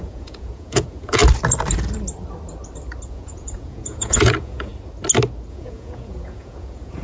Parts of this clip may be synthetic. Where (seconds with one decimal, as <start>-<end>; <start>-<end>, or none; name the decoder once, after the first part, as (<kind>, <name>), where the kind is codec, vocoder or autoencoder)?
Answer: 0.0-1.2 (vocoder, Vocos); 3.1-4.7; 5.5-7.0